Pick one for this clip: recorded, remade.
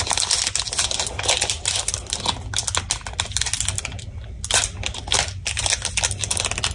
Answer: recorded